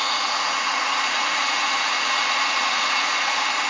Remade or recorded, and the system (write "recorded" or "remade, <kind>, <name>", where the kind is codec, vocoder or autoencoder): remade, vocoder, Vocos